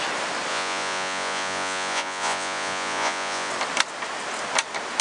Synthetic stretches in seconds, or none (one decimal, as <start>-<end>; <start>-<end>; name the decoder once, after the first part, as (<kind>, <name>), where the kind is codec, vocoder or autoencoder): 0.5-3.5 (vocoder, Vocos)